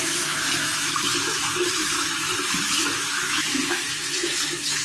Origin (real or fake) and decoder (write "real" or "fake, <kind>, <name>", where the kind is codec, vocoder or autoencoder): fake, autoencoder, DAC-VAE